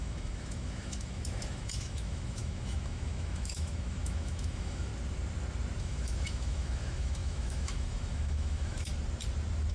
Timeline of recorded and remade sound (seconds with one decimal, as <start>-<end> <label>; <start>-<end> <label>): 0.0-4.9 remade; 4.9-5.8 recorded; 5.8-8.9 remade; 8.9-9.7 recorded